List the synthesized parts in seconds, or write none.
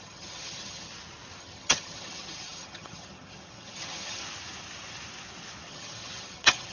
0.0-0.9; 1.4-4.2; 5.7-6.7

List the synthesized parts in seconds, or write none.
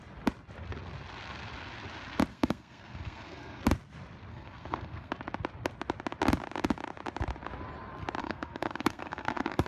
2.3-3.6; 4.3-5.1; 8.2-9.7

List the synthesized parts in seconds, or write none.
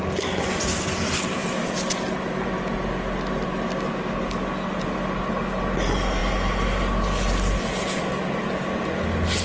none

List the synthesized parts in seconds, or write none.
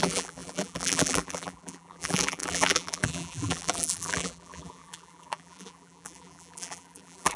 0.0-7.4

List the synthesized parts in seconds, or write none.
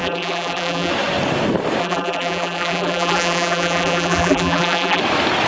0.0-0.9; 1.8-5.0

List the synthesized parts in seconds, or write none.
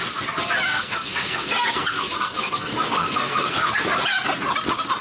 0.7-3.7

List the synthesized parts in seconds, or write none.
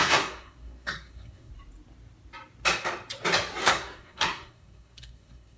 0.0-1.5; 3.6-5.6